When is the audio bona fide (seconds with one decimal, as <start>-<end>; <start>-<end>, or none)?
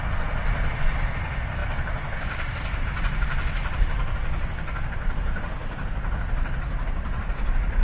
0.0-7.8